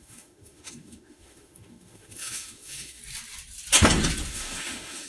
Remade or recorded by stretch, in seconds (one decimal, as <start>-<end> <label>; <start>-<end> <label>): 0.0-3.0 remade; 3.0-4.3 recorded; 4.3-5.1 remade